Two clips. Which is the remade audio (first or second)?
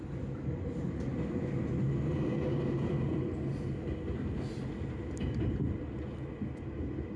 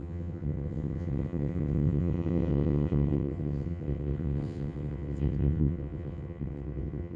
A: second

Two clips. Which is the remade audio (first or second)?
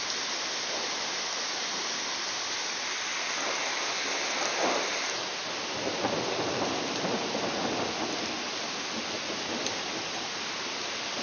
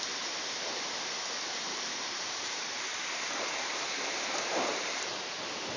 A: second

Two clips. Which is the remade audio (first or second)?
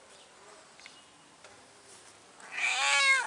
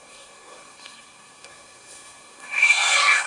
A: second